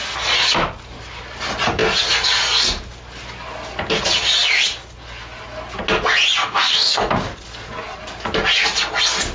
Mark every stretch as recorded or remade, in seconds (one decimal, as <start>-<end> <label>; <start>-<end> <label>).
0.0-6.4 recorded; 6.4-7.1 remade; 7.1-9.3 recorded